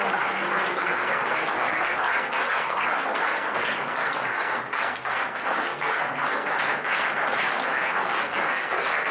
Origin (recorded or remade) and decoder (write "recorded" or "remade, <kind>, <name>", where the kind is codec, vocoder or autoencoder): remade, codec, SNAC